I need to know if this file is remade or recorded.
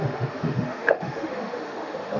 remade